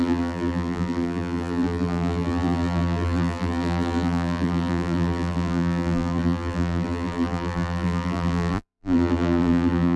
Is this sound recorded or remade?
remade